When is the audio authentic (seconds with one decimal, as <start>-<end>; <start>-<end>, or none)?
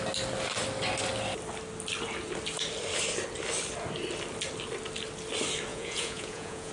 0.0-5.7